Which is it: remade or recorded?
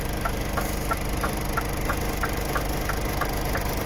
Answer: recorded